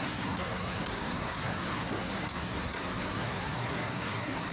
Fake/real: fake